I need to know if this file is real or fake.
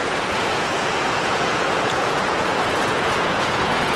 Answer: fake